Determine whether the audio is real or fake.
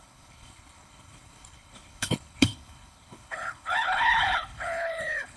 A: fake